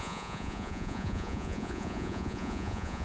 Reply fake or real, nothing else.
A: fake